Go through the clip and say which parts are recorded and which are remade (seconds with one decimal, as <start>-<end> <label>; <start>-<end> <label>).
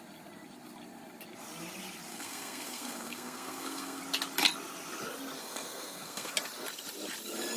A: 0.0-2.1 recorded; 2.1-4.0 remade; 4.0-5.4 recorded; 5.4-6.3 remade; 6.3-7.6 recorded